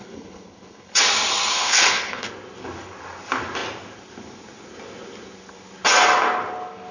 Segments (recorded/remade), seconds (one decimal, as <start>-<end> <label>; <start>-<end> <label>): 0.0-1.0 remade; 1.0-1.5 recorded; 1.5-2.3 remade; 2.3-6.9 recorded